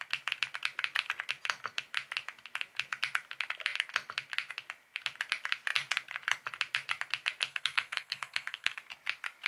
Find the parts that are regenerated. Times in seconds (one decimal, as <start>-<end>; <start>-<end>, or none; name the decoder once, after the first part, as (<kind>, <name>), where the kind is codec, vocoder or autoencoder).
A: 7.5-8.8 (codec, SNAC)